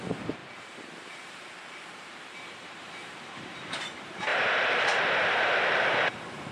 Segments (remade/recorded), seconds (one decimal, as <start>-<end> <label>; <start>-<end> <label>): 0.0-6.5 remade